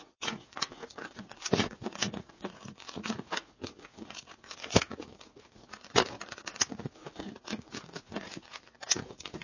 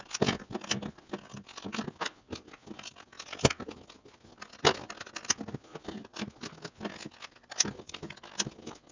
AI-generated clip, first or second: first